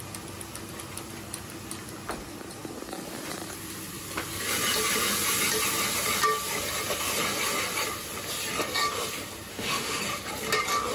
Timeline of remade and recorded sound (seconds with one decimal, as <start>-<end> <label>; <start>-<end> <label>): 0.0-9.5 recorded; 9.5-10.0 remade; 10.0-10.9 recorded